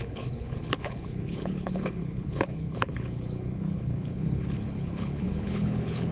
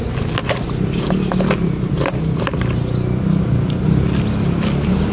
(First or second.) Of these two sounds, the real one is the second